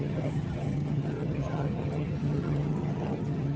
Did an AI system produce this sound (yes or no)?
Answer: yes